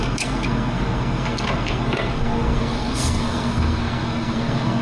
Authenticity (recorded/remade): remade